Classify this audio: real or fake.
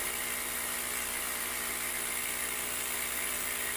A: fake